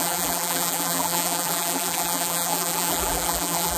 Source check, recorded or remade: remade